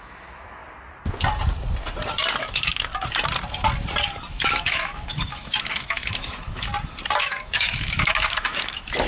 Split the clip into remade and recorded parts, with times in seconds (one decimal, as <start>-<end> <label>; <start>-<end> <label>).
0.0-0.6 remade; 0.6-2.4 recorded; 2.4-2.9 remade; 2.9-4.3 recorded; 4.3-6.7 remade; 6.7-7.2 recorded; 7.2-9.1 remade